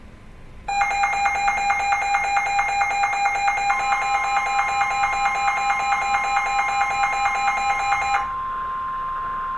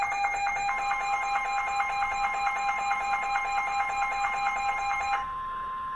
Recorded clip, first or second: first